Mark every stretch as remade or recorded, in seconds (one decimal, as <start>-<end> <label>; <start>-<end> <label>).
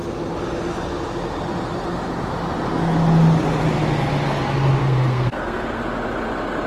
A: 0.0-4.8 recorded; 4.8-5.8 remade; 5.8-6.7 recorded